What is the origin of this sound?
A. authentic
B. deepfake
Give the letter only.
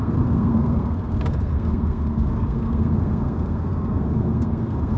B